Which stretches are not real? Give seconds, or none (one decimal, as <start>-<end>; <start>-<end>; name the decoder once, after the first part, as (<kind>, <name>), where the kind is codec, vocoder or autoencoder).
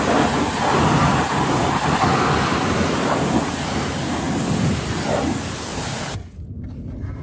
1.1-2.0 (vocoder, BigVGAN v2); 2.5-4.1; 5.7-6.4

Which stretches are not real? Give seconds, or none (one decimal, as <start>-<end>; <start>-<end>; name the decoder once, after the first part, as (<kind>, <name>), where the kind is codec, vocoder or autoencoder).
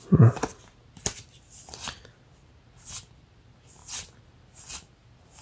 none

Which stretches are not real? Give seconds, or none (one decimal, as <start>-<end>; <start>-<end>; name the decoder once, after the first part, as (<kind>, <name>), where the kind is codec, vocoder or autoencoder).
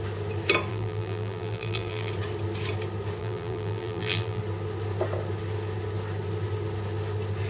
0.7-2.1 (vocoder, BigVGAN v2); 3.2-4.4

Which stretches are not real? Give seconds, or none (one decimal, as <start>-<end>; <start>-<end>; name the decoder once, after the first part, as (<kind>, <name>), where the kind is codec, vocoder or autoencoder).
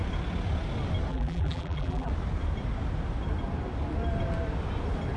1.1-2.1 (vocoder, BigVGAN v2)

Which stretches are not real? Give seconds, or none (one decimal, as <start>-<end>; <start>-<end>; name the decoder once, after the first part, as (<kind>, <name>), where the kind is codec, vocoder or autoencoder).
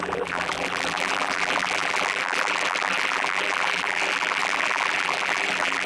0.0-5.9 (vocoder, BigVGAN v2)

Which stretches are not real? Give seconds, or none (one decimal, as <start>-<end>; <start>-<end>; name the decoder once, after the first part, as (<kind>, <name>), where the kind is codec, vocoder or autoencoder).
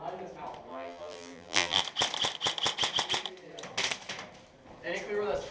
0.7-1.8 (vocoder, BigVGAN v2)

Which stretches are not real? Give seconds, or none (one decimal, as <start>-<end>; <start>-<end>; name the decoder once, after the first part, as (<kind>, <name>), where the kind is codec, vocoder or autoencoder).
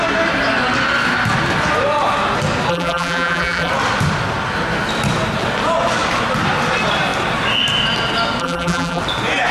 2.7-3.7 (vocoder, BigVGAN v2); 8.4-9.0